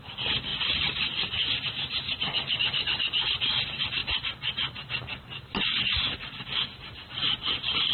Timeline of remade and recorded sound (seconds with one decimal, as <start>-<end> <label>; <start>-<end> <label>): 0.0-7.9 recorded